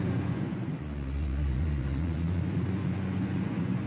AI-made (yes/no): yes